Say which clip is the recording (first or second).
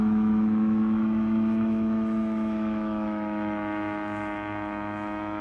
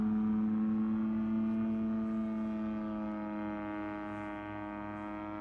second